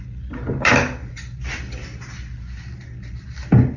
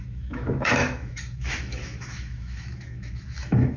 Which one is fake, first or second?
second